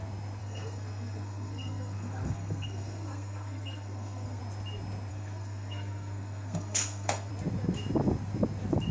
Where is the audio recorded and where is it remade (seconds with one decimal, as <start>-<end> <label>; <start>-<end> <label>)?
0.0-0.4 recorded; 0.4-4.4 remade; 4.4-5.1 recorded; 5.1-7.3 remade; 7.3-8.9 recorded